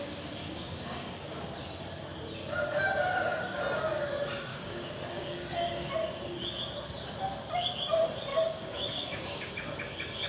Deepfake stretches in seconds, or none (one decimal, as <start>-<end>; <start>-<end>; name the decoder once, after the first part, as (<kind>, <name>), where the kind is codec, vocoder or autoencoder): 0.4-1.4 (codec, DAC); 4.5-5.9; 8.3-9.5